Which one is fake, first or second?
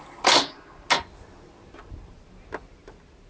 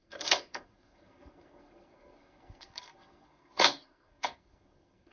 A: second